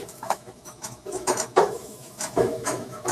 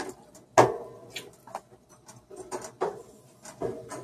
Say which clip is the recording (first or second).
second